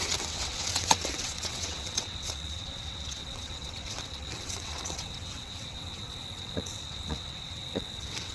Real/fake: fake